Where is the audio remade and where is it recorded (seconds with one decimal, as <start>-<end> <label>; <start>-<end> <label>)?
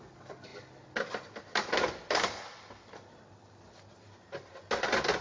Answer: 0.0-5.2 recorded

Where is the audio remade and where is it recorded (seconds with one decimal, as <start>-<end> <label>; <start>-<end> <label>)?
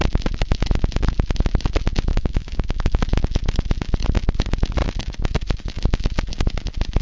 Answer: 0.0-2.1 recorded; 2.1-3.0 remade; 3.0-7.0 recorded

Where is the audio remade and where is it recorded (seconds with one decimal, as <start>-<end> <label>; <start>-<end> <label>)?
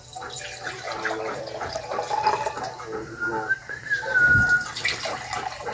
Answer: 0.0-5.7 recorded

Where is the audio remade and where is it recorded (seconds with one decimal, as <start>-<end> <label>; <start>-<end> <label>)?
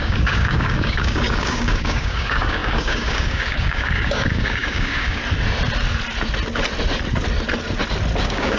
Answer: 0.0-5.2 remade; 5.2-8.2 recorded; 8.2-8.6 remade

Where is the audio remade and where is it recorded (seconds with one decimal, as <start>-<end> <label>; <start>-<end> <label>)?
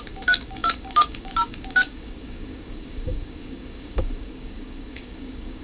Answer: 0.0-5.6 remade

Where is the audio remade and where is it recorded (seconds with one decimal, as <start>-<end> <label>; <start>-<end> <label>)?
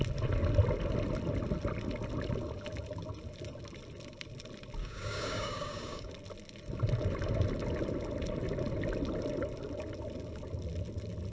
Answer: 0.0-4.8 recorded; 4.8-6.1 remade; 6.1-11.3 recorded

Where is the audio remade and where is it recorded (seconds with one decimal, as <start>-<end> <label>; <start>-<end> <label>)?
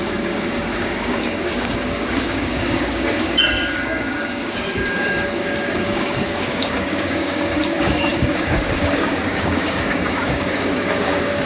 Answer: 0.0-11.4 remade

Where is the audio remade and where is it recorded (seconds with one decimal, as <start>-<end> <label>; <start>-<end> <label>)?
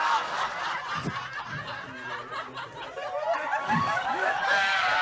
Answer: 0.0-0.6 remade; 0.6-3.6 recorded; 3.6-5.0 remade